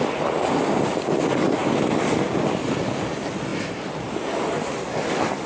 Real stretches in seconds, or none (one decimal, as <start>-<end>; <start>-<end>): 0.0-5.5